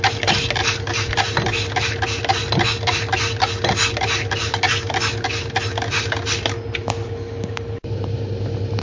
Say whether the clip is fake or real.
real